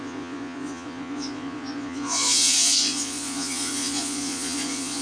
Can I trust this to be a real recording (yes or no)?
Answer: no